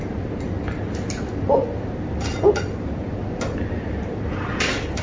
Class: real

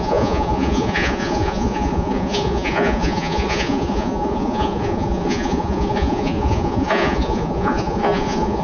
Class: fake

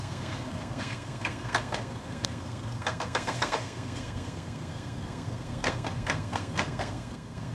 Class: fake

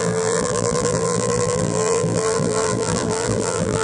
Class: fake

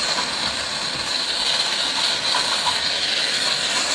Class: real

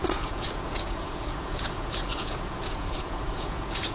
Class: fake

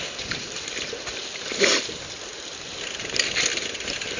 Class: real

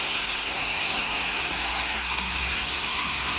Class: fake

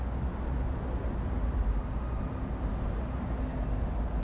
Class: real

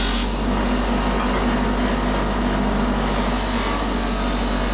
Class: real